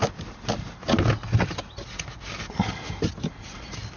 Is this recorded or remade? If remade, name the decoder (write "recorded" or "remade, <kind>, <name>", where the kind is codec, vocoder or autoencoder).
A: recorded